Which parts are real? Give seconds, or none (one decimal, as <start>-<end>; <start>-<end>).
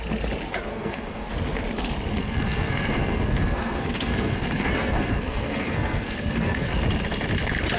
0.0-0.7; 1.3-2.1; 6.7-7.8